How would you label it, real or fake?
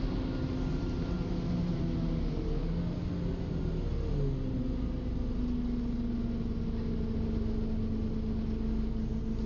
real